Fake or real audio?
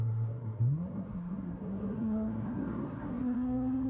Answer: fake